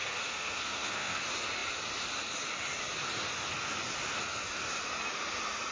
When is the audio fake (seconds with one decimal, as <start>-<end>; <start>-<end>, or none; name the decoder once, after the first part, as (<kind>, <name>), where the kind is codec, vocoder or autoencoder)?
0.0-1.2 (codec, SNAC)